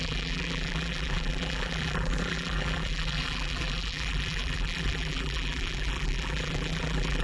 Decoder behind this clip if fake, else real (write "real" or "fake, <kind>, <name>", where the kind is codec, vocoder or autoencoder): fake, vocoder, BigVGAN v2